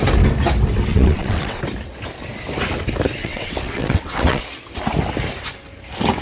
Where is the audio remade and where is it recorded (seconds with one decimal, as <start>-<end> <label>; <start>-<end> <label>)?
0.0-0.9 recorded; 0.9-1.6 remade; 1.6-3.2 recorded; 3.2-4.4 remade; 4.4-6.2 recorded